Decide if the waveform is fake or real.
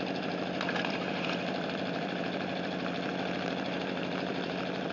fake